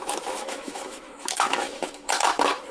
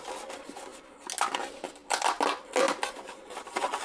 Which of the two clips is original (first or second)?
second